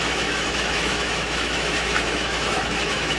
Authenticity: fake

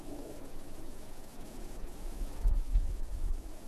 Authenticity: fake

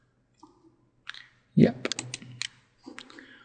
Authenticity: real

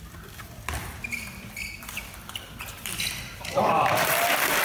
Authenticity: fake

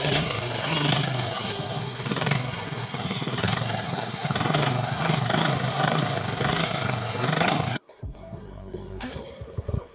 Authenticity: fake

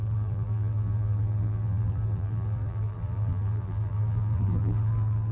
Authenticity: fake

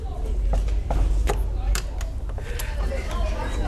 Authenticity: real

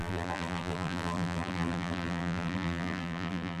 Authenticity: fake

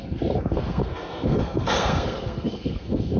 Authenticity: fake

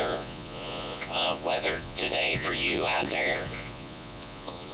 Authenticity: fake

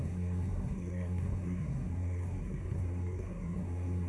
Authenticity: fake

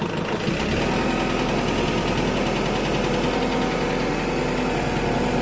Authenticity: real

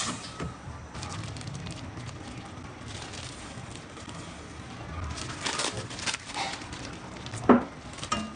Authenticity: real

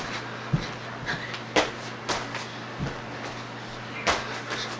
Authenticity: real